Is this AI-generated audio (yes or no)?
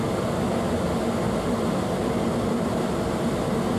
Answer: no